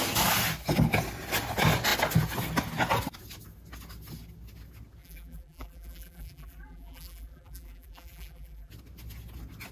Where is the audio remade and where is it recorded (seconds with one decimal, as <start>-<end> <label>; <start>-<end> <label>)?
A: 0.0-5.0 recorded; 5.0-8.7 remade; 8.7-9.7 recorded